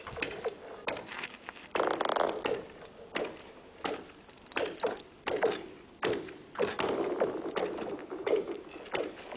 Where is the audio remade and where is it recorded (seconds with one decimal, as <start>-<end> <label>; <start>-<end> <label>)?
0.0-8.0 recorded; 8.0-8.6 remade; 8.6-9.4 recorded